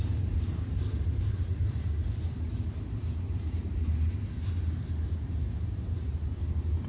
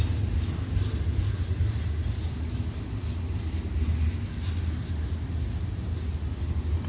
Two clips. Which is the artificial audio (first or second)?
first